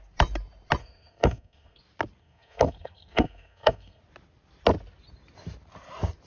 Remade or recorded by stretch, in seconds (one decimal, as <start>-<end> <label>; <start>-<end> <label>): 0.0-0.8 recorded; 0.8-1.8 remade; 1.8-2.2 recorded; 2.2-4.0 remade; 4.0-6.3 recorded